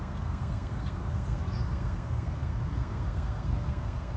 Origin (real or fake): fake